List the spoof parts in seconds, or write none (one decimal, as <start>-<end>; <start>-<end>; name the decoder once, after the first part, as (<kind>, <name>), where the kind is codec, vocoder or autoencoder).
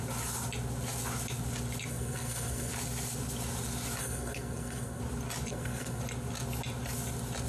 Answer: 1.9-2.7 (codec, SNAC); 4.0-5.0; 5.5-6.0